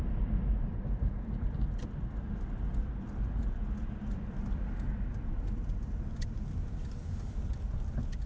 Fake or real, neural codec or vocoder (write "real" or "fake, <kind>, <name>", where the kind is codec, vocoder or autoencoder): fake, vocoder, BigVGAN v2